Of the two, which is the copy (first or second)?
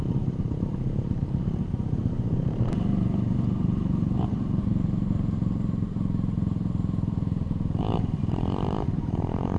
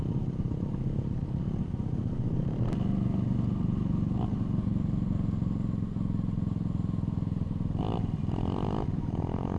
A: first